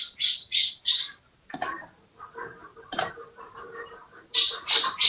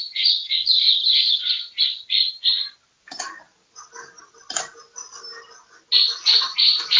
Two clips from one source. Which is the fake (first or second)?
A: first